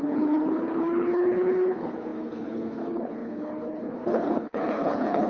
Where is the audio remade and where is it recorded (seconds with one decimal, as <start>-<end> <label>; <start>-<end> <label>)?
0.0-5.3 remade